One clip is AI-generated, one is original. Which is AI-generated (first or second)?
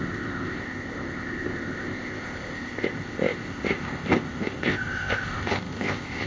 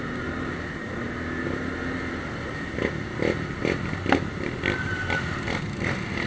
first